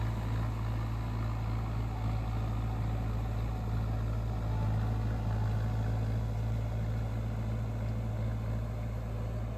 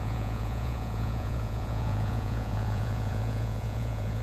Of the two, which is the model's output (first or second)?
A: second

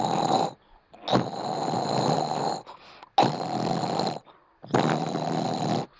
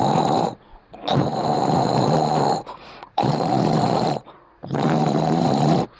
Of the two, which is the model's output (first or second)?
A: second